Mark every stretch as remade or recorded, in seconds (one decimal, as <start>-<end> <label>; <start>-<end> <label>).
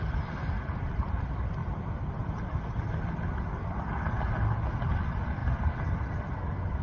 0.0-6.8 recorded